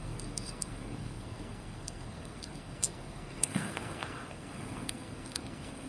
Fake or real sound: fake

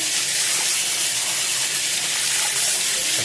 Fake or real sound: real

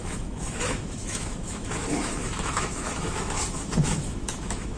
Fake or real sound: fake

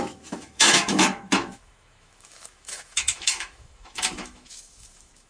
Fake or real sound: fake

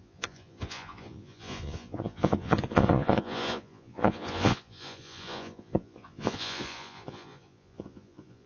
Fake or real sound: fake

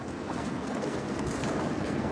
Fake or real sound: fake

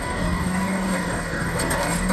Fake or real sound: fake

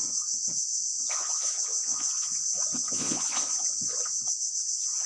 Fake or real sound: fake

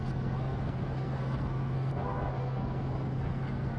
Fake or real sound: fake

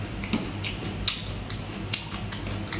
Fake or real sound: real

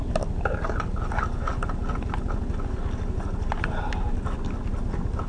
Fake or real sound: real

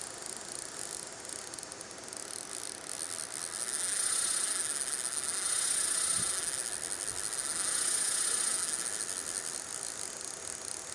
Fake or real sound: real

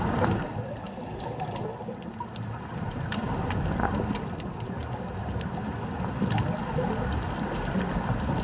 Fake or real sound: real